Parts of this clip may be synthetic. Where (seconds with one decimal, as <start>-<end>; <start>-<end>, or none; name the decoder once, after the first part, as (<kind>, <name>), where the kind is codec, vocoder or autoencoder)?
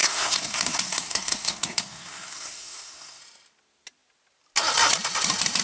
0.0-3.2 (codec, SNAC)